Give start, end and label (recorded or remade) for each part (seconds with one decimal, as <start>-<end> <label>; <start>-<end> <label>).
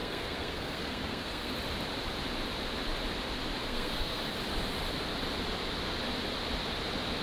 0.0-1.5 remade; 1.5-3.6 recorded; 3.6-4.2 remade; 4.2-7.2 recorded